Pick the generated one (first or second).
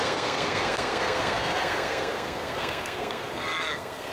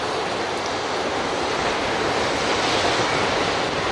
first